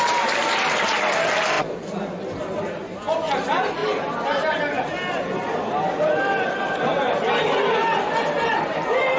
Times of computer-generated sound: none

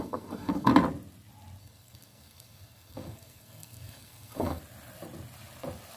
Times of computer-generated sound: 0.0-0.7 (codec, SNAC); 1.6-4.6

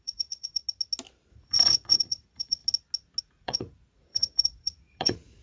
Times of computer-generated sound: 0.0-0.6 (vocoder, Vocos); 1.3-2.6; 3.2-5.4

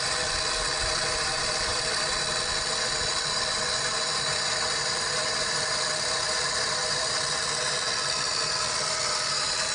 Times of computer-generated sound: none

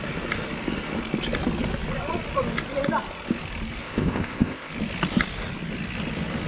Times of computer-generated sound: 3.8-4.7 (codec, ZipCodec)